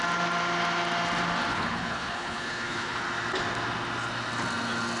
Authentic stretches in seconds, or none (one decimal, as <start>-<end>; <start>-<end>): 0.0-1.5; 3.0-5.0